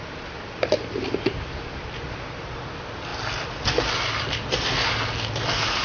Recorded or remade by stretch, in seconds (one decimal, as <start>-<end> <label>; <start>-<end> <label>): 0.0-5.8 recorded